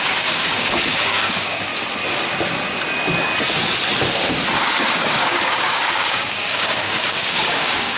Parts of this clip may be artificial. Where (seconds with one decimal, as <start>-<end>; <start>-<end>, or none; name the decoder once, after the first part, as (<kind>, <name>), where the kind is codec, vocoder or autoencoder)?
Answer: 0.0-1.7 (codec, DAC); 4.6-8.0